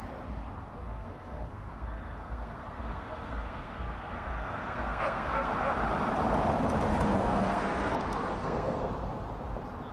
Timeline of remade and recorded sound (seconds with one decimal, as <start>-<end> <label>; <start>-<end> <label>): 0.0-0.8 recorded; 0.8-5.5 remade; 5.5-6.9 recorded; 6.9-8.0 remade; 8.0-8.4 recorded; 8.4-8.9 remade; 8.9-9.9 recorded